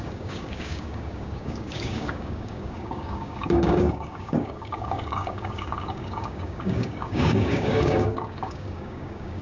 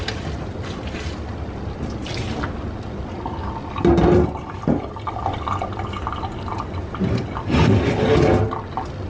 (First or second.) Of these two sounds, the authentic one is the second